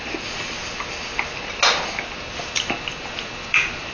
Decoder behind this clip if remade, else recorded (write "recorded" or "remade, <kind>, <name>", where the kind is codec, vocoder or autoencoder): recorded